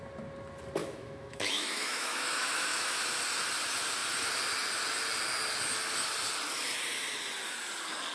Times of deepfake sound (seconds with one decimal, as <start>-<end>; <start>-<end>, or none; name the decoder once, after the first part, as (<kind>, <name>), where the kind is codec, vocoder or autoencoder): 0.8-3.0 (autoencoder, DAC-VAE)